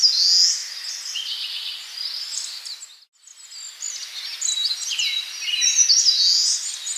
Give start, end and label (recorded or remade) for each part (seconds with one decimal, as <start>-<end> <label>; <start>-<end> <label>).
0.0-7.0 recorded